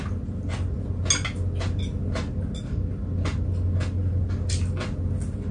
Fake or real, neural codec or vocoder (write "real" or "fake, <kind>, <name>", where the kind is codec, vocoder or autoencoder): real